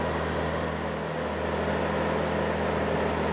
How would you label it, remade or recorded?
recorded